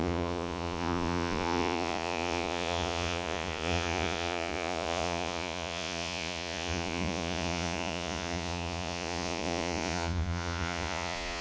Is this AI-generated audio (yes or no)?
yes